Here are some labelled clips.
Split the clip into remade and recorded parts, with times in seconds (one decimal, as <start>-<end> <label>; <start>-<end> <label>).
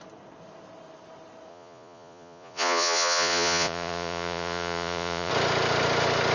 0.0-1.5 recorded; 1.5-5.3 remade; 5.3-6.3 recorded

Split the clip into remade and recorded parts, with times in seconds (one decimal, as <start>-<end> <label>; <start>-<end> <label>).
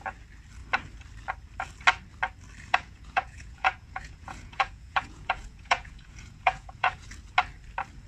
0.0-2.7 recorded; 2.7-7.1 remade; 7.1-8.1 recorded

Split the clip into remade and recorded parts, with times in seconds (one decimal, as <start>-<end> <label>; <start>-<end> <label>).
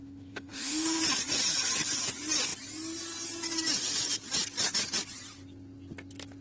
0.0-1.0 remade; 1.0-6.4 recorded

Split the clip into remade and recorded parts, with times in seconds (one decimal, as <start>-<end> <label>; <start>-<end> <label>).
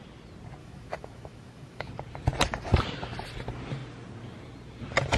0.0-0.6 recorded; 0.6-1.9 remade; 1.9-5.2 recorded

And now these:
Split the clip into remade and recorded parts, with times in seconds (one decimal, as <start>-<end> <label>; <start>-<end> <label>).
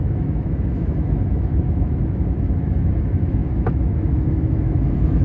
0.0-5.2 remade